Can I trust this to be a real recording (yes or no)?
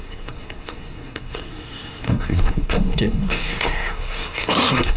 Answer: no